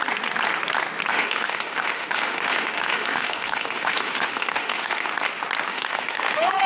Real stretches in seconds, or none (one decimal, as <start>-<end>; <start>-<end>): 0.0-1.1; 5.1-5.7